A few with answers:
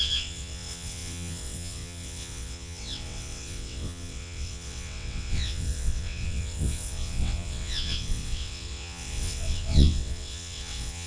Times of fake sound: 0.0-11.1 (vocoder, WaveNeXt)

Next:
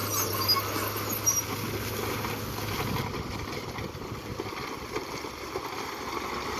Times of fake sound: none

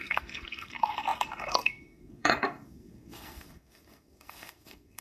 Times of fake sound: 0.0-5.0 (codec, SNAC)

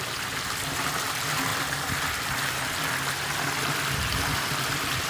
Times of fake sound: none

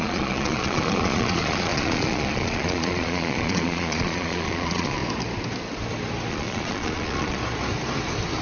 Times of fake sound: 0.0-5.0 (vocoder, Vocos); 6.3-7.4

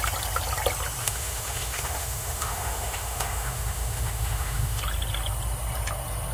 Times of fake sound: 1.0-4.8 (autoencoder, DAC-VAE)